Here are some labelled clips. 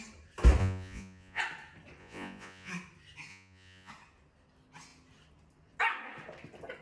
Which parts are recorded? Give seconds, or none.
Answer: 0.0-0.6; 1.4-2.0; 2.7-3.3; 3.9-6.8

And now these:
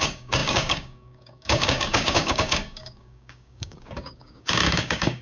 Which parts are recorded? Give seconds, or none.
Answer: none

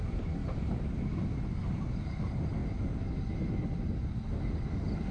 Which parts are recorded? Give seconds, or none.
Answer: 0.0-5.1

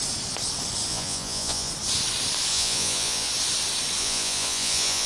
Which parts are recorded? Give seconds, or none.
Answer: 0.0-0.9; 1.7-2.5; 3.3-4.0

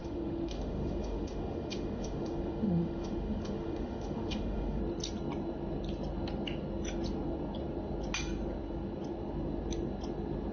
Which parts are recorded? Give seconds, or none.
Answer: 4.8-10.5